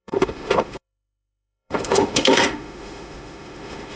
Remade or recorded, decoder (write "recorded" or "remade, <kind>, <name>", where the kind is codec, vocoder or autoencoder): remade, autoencoder, DAC-VAE